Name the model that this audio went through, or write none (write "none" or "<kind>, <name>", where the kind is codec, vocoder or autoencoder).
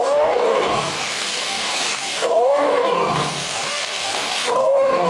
codec, DAC